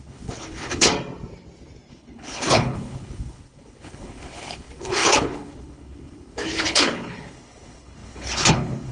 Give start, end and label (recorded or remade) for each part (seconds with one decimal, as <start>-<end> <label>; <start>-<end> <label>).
0.0-0.9 remade; 0.9-1.9 recorded; 1.9-8.9 remade